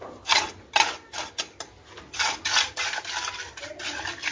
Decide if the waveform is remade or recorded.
recorded